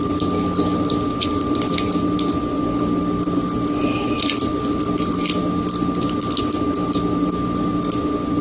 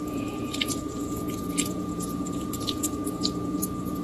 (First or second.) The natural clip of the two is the first